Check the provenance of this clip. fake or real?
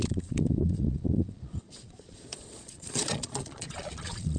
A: fake